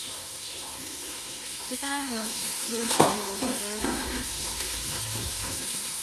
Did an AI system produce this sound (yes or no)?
yes